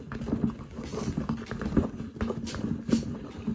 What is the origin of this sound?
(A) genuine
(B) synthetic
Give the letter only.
A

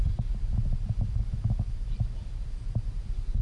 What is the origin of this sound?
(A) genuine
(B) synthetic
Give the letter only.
A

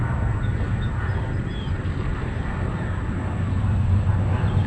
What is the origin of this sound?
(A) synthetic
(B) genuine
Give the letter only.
B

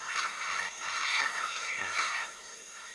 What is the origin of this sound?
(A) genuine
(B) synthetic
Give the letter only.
B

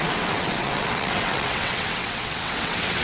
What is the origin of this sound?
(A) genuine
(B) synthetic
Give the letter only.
B